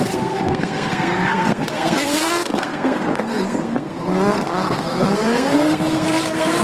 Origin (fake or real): fake